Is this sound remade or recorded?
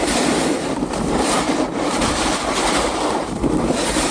remade